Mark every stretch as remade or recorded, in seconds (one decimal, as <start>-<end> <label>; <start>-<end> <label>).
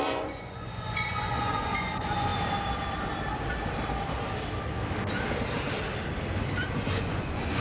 0.0-2.3 remade; 2.3-6.9 recorded; 6.9-7.6 remade